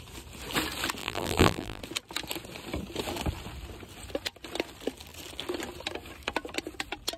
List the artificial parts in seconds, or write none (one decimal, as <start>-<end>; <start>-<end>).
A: 1.0-1.8